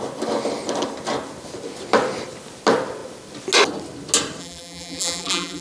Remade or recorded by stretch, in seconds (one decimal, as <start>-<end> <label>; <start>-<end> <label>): 0.0-4.4 recorded; 4.4-5.6 remade